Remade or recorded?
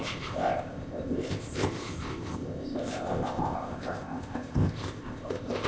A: remade